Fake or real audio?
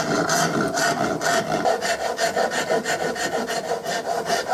real